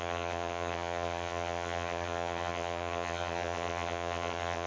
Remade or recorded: remade